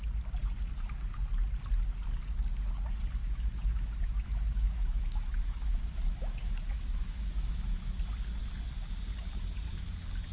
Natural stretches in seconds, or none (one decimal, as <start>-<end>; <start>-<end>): 0.0-3.2; 8.0-10.3